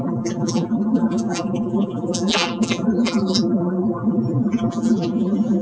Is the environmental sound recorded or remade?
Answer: remade